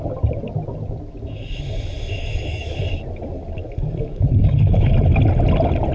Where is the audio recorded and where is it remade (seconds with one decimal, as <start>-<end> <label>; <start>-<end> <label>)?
0.0-2.2 recorded; 2.2-3.0 remade; 3.0-3.6 recorded; 3.6-4.9 remade; 4.9-5.9 recorded